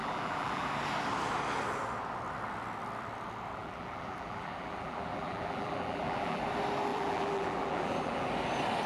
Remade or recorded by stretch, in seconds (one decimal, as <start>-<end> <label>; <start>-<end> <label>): 0.0-0.7 remade; 0.7-3.6 recorded; 3.6-6.4 remade; 6.4-6.9 recorded; 6.9-8.3 remade; 8.3-8.9 recorded